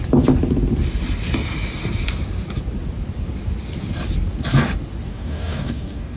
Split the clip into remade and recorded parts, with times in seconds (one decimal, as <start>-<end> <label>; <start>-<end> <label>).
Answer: 0.0-5.1 recorded; 5.1-6.2 remade